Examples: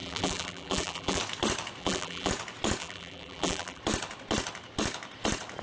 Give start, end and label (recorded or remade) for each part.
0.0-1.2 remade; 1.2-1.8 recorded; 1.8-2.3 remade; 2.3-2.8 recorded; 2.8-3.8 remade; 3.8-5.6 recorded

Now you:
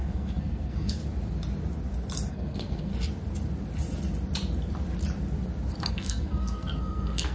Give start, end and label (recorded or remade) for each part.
0.0-1.0 remade; 1.0-2.3 recorded; 2.3-2.9 remade; 2.9-5.9 recorded; 5.9-7.3 remade

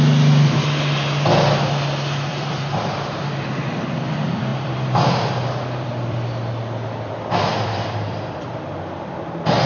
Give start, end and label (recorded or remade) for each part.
0.0-2.3 recorded; 2.3-3.8 remade; 3.8-4.5 recorded; 4.5-8.6 remade; 8.6-9.7 recorded

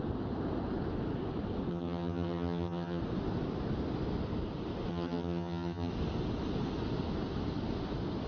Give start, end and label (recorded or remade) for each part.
0.0-1.7 recorded; 1.7-3.0 remade; 3.0-4.9 recorded; 4.9-5.9 remade; 5.9-8.3 recorded